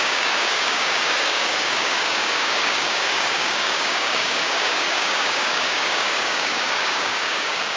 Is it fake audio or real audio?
fake